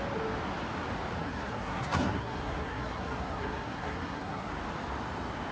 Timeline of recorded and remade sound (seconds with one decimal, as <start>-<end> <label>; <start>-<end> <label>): 0.0-1.2 recorded; 1.2-4.5 remade; 4.5-5.5 recorded